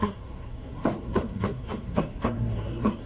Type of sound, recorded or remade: remade